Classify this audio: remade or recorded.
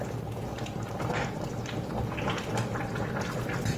remade